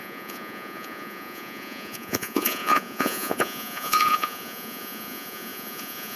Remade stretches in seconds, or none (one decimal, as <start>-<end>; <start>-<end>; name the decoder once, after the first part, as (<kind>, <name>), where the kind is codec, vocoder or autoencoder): 0.0-6.2 (vocoder, Vocos)